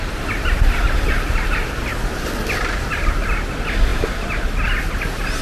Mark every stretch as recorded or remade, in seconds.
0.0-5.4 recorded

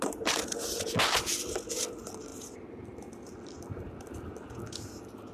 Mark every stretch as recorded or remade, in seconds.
0.0-5.3 recorded

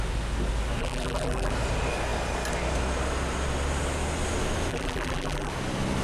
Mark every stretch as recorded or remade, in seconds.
0.0-0.8 recorded; 0.8-1.5 remade; 1.5-4.7 recorded; 4.7-5.5 remade; 5.5-6.0 recorded

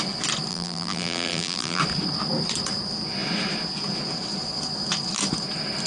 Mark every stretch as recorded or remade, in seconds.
0.0-0.5 recorded; 0.5-1.8 remade; 1.8-5.9 recorded

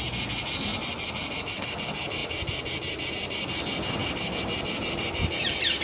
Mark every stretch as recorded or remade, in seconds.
0.0-2.2 recorded; 2.2-3.1 remade; 3.1-5.8 recorded

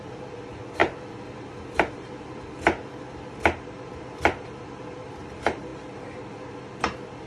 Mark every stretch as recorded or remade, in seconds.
0.0-5.7 remade; 5.7-7.3 recorded

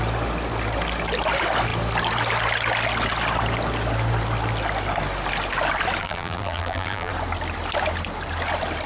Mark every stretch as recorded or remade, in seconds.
0.0-6.0 recorded; 6.0-7.1 remade; 7.1-8.9 recorded